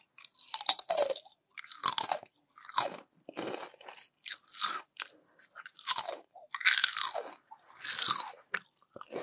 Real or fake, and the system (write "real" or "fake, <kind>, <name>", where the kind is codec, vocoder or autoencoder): real